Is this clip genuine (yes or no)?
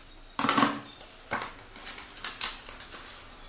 yes